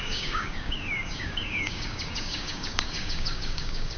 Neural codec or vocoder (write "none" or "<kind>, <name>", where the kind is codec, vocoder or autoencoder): codec, DAC